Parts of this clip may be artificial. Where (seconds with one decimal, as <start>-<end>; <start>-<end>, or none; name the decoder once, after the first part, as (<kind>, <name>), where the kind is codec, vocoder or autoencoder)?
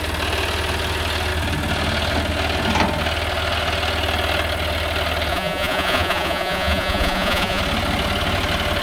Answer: 5.3-7.6 (vocoder, Vocos)